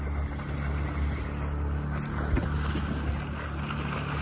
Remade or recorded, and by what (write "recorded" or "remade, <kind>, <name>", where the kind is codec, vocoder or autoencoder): recorded